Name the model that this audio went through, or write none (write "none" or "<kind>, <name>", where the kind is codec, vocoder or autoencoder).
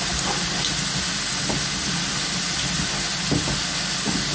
none